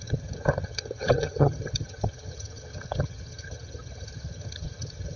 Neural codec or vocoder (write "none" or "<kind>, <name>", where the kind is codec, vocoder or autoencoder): vocoder, HiFi-GAN